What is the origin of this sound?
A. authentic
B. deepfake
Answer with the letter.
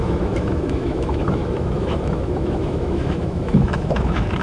B